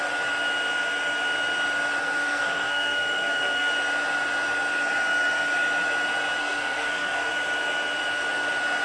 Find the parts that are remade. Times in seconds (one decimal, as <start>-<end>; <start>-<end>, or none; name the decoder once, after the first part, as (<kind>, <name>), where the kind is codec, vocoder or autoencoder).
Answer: 2.0-3.7 (codec, SNAC); 6.4-7.3